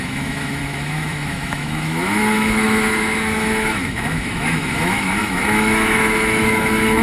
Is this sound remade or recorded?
remade